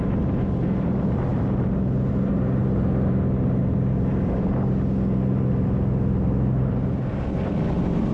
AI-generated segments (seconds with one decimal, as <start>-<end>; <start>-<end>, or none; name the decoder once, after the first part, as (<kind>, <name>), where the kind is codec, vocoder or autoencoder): none